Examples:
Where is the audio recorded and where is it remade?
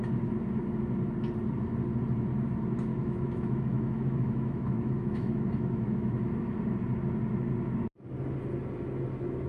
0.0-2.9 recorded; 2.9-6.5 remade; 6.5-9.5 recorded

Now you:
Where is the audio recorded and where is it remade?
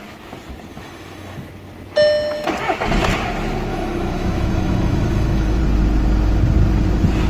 0.0-0.7 recorded; 0.7-1.5 remade; 1.5-3.7 recorded; 3.7-5.6 remade; 5.6-7.3 recorded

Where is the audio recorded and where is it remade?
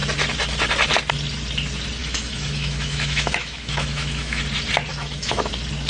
0.0-2.0 recorded; 2.0-4.4 remade; 4.4-4.9 recorded; 4.9-5.5 remade; 5.5-5.9 recorded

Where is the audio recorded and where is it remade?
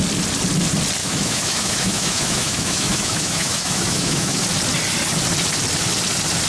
0.0-1.0 recorded; 1.0-4.4 remade; 4.4-6.5 recorded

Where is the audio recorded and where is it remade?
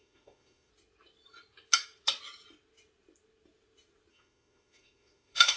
0.0-0.7 remade; 0.7-4.1 recorded; 4.1-5.6 remade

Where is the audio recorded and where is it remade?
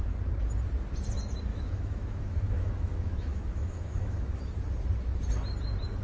0.0-1.5 recorded; 1.5-4.4 remade; 4.4-6.0 recorded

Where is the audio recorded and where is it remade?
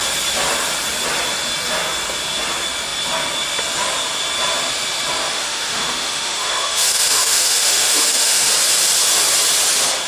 0.0-5.3 recorded; 5.3-8.5 remade; 8.5-10.1 recorded